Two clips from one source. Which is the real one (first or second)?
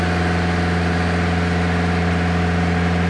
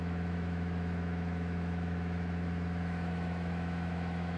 first